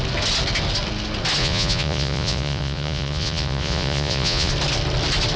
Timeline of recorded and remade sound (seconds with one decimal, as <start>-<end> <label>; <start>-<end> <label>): 0.0-1.4 recorded; 1.4-4.5 remade; 4.5-5.4 recorded